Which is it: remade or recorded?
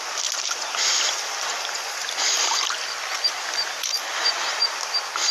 recorded